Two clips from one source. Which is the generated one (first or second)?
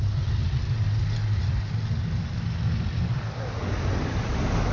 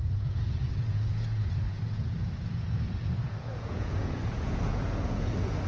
second